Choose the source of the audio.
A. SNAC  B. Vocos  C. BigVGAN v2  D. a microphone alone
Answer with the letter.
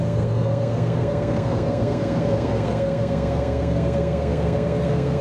A